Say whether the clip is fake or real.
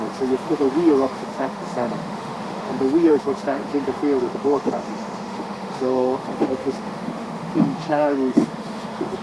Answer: fake